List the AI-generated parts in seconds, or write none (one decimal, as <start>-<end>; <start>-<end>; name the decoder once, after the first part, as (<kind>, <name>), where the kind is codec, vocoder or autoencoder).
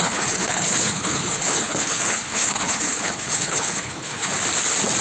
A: 0.0-4.3 (codec, HILCodec)